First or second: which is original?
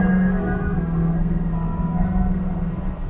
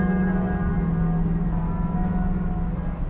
second